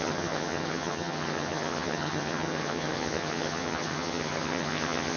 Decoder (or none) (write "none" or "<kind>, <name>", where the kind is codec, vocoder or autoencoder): vocoder, HiFi-GAN